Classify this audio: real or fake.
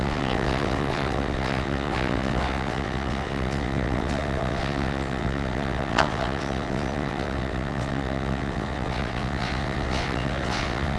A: fake